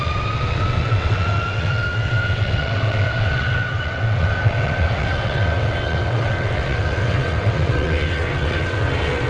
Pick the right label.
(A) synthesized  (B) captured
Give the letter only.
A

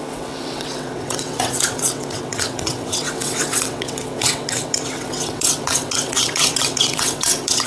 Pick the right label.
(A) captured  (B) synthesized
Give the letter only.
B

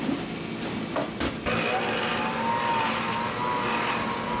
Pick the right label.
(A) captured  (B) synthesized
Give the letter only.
A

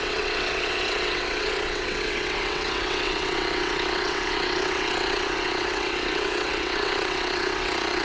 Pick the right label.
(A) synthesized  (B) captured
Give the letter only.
A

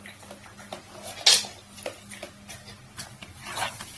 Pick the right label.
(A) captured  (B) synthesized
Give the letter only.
A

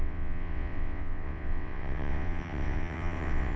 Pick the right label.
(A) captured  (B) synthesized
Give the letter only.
B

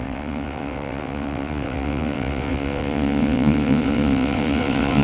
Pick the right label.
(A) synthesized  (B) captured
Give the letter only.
A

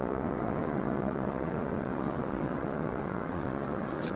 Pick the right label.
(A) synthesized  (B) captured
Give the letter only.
A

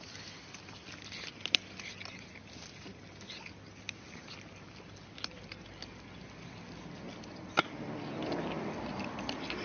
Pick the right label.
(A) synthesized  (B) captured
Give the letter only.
B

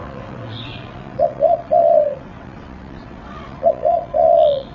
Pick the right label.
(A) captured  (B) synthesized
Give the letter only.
B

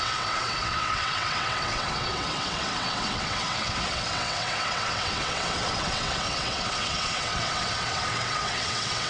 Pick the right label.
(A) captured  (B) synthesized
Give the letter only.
B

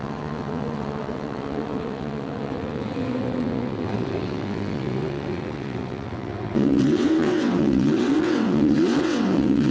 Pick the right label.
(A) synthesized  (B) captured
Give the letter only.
A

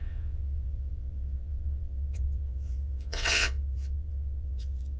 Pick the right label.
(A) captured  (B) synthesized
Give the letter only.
B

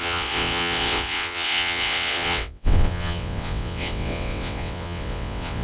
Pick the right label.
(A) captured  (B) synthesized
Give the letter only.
B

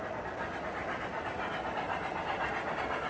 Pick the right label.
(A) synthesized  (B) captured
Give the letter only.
B